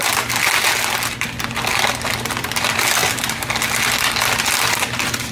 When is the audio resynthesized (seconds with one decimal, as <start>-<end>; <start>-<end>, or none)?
none